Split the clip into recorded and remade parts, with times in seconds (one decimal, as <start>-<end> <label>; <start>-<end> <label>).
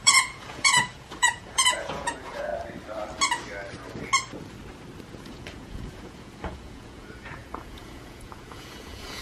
0.0-2.5 remade; 2.5-5.1 recorded; 5.1-9.2 remade